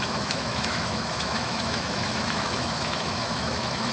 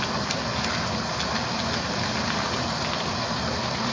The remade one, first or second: first